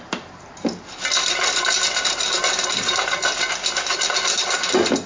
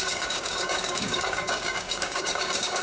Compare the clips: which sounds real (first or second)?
first